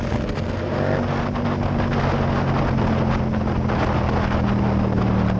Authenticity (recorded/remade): recorded